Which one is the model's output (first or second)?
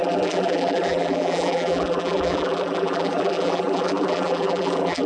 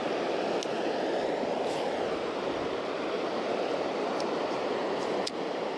first